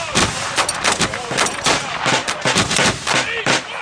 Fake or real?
real